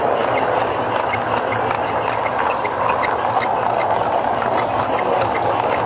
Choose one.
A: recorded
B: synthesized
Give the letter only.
A